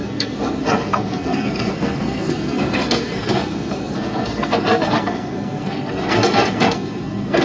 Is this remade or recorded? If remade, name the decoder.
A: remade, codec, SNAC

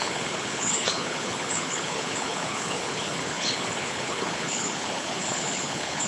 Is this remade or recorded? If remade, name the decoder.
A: remade, codec, HILCodec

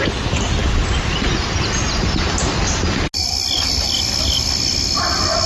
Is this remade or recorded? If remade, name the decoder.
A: recorded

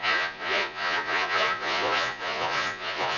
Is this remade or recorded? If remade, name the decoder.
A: remade, vocoder, Vocos